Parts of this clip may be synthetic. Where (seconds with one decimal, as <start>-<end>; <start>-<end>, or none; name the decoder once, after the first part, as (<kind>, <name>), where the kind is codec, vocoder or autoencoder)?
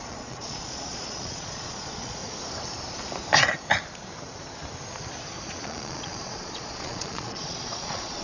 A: 0.0-2.2 (vocoder, Vocos); 5.5-8.2